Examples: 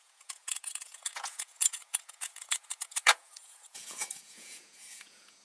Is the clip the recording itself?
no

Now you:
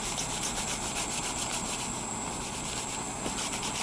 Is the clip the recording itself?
yes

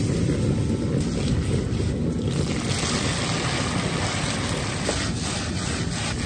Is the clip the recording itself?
yes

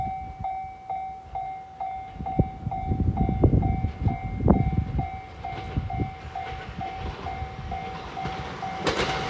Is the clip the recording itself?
yes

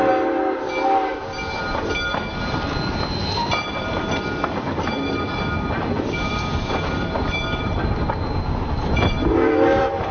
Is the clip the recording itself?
yes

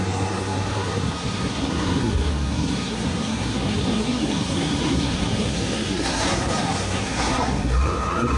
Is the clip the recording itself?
no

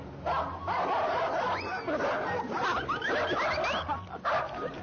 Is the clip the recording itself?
yes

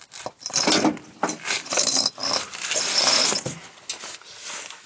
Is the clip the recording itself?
yes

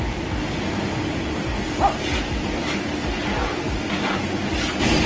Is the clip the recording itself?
yes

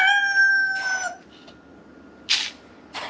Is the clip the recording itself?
yes